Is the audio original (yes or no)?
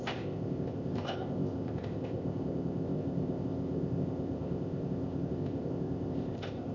no